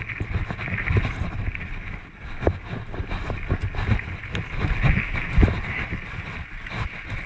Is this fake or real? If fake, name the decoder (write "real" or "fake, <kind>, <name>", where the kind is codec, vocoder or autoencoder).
real